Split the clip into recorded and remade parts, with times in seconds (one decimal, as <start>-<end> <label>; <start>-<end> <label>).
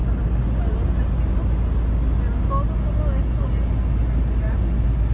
0.0-5.1 recorded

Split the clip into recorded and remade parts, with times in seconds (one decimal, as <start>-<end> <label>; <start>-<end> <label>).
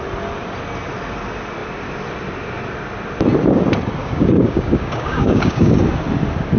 0.0-4.0 recorded; 4.0-5.7 remade; 5.7-6.6 recorded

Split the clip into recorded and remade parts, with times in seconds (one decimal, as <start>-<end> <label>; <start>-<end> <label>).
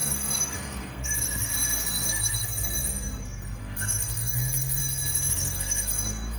0.0-1.5 remade; 1.5-2.1 recorded; 2.1-4.8 remade; 4.8-5.3 recorded; 5.3-6.4 remade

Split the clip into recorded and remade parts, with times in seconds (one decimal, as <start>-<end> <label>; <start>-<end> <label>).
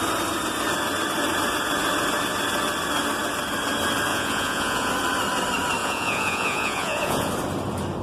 0.0-4.1 recorded; 4.1-4.9 remade; 4.9-5.8 recorded; 5.8-7.3 remade; 7.3-8.0 recorded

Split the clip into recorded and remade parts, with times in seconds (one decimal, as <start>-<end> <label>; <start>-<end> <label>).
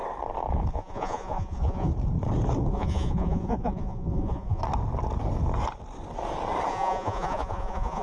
0.0-0.7 recorded; 0.7-1.9 remade; 1.9-2.7 recorded; 2.7-4.6 remade; 4.6-6.7 recorded; 6.7-8.0 remade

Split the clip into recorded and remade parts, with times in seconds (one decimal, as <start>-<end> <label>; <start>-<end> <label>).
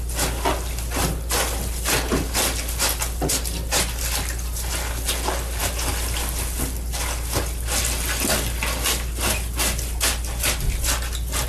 0.0-11.5 recorded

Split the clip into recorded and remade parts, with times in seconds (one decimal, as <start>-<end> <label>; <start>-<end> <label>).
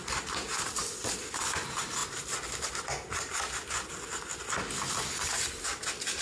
0.0-2.0 remade; 2.0-5.1 recorded; 5.1-6.2 remade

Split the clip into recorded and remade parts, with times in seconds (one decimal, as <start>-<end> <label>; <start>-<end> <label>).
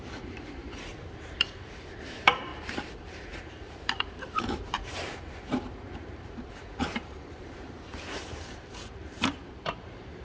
0.0-2.5 remade; 2.5-3.0 recorded; 3.0-10.2 remade